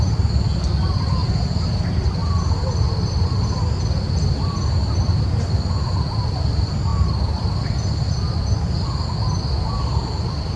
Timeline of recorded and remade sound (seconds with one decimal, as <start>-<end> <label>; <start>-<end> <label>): 0.0-1.2 remade; 1.2-1.8 recorded; 1.8-2.2 remade; 2.2-4.0 recorded; 4.0-10.6 remade